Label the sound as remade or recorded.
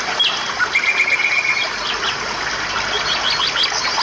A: recorded